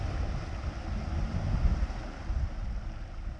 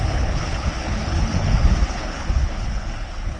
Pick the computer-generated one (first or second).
second